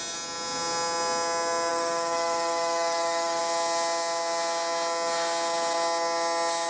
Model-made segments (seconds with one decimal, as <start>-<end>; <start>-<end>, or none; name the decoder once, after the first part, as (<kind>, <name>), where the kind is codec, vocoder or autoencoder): 1.7-3.4 (codec, DAC)